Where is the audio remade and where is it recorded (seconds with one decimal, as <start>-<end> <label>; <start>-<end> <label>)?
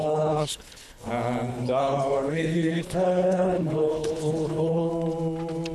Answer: 0.0-1.1 remade; 1.1-1.5 recorded; 1.5-4.9 remade; 4.9-5.7 recorded